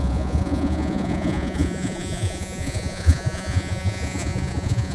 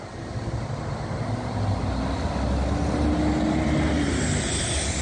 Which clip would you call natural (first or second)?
second